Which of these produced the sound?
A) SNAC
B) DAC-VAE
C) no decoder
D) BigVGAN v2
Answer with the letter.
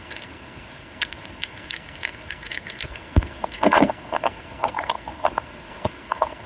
A